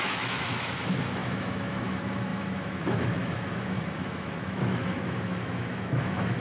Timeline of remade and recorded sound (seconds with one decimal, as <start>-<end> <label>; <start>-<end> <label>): 0.0-6.4 remade